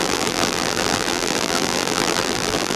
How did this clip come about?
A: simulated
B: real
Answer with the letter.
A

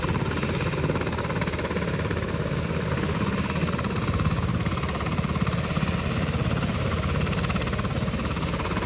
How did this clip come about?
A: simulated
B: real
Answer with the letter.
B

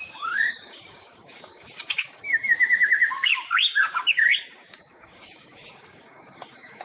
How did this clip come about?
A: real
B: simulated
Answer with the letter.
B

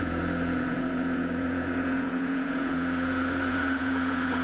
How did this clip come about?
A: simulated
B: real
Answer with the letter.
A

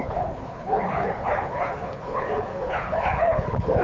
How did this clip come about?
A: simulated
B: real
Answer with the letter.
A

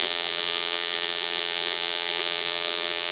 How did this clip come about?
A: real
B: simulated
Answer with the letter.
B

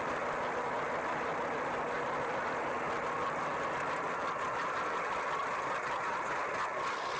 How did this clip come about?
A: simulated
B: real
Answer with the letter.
B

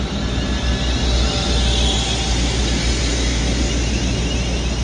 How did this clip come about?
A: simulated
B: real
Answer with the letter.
B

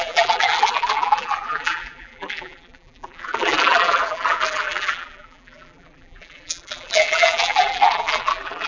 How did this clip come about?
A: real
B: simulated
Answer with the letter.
B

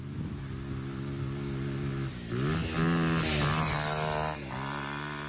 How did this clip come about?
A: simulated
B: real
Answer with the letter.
B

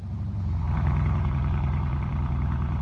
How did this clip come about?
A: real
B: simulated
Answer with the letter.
B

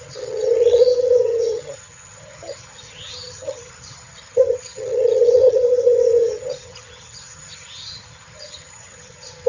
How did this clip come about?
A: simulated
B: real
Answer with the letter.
A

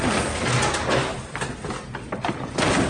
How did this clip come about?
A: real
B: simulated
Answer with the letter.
A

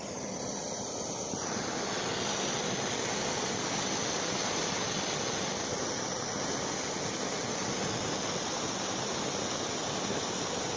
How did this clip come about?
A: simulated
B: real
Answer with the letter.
B